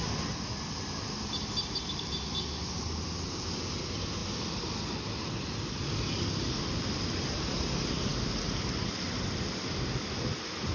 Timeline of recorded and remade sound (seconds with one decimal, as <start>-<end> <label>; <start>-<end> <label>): 0.0-10.7 recorded